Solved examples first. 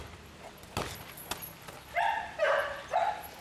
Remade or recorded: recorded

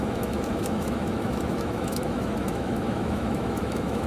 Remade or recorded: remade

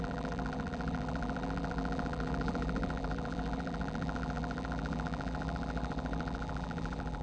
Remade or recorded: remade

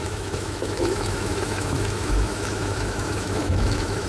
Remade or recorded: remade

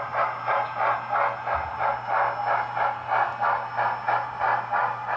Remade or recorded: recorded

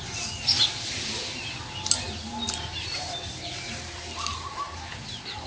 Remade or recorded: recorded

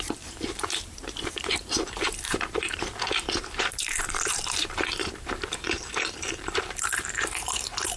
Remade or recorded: remade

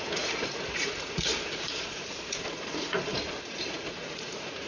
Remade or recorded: remade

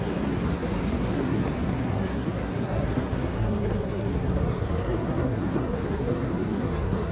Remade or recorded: remade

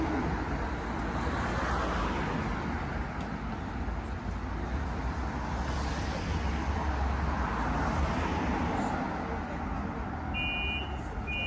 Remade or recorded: recorded